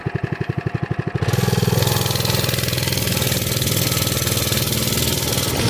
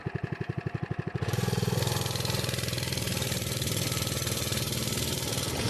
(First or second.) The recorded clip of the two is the first